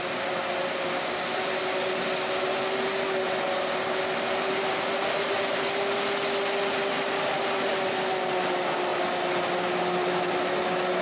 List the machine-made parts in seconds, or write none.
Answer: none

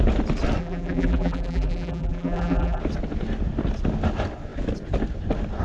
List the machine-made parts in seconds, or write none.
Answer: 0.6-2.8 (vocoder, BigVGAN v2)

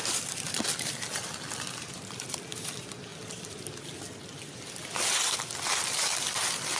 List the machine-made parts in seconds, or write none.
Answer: none